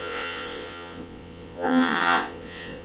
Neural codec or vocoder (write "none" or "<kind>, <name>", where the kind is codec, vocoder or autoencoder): vocoder, WaveNeXt